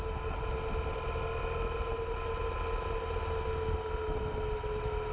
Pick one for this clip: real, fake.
real